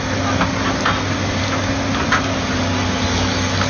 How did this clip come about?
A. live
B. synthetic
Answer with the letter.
A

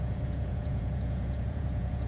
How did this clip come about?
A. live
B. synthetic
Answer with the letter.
B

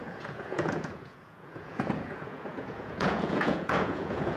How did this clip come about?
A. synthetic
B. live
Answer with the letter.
A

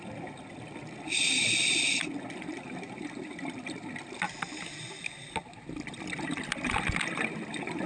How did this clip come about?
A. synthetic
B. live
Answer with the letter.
B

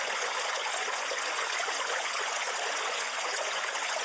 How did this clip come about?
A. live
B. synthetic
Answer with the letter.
B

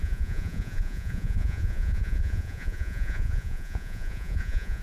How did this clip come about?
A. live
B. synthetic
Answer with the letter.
B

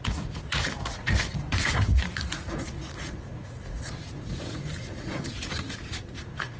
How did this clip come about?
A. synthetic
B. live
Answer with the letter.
A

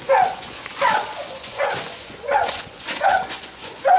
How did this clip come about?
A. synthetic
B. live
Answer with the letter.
A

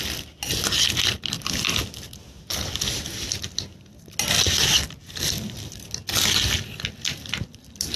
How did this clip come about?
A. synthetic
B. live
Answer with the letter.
B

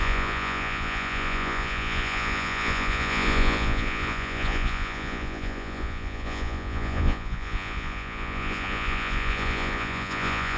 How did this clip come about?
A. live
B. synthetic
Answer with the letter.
B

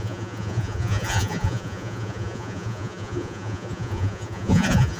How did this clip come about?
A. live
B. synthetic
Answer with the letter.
B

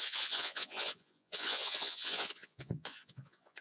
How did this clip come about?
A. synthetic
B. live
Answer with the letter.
A